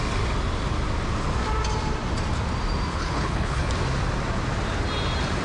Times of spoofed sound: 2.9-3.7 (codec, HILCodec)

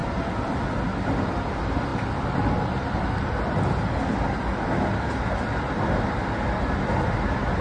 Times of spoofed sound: none

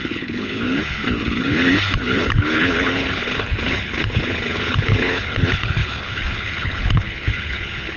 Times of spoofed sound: 0.0-8.0 (codec, HILCodec)

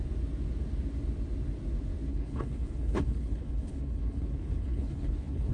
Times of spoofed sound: 2.1-5.5 (codec, HILCodec)

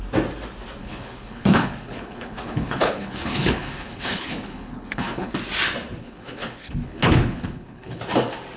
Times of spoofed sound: 0.8-5.3 (codec, HILCodec); 6.0-8.0

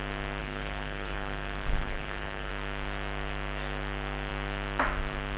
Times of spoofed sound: 0.4-2.5 (codec, HILCodec)

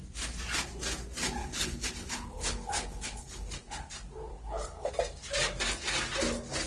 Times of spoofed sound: 1.4-3.9 (codec, HILCodec); 4.3-4.9

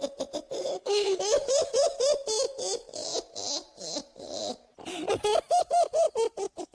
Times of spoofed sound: 0.6-1.2 (codec, HILCodec)